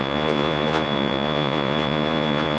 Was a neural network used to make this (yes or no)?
yes